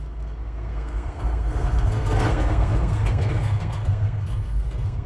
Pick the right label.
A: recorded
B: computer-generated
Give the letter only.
B